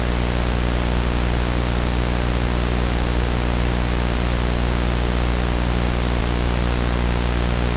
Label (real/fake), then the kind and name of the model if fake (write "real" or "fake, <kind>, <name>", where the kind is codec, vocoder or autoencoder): real